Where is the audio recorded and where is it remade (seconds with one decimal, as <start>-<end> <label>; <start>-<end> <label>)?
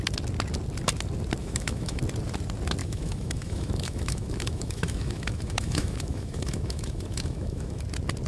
0.0-1.4 recorded; 1.4-2.0 remade; 2.0-2.8 recorded; 2.8-7.8 remade; 7.8-8.3 recorded